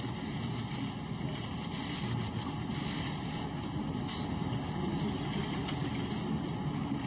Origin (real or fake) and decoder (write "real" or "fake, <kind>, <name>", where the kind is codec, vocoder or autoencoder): real